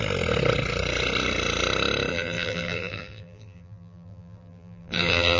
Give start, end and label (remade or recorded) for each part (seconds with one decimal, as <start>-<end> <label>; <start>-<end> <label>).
0.0-2.1 recorded; 2.1-5.4 remade